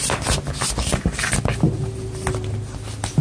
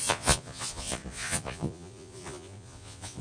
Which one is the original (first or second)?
first